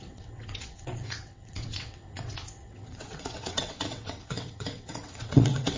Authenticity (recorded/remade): remade